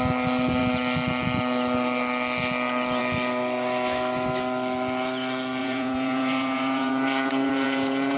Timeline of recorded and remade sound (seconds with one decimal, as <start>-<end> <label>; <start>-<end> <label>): 0.0-5.6 recorded; 5.6-8.2 remade